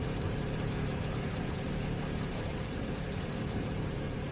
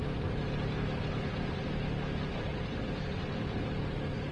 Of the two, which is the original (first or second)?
second